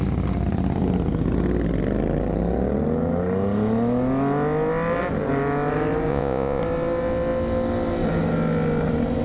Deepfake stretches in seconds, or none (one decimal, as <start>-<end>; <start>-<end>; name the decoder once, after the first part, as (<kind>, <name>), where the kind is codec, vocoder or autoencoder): 6.1-6.6 (vocoder, Vocos)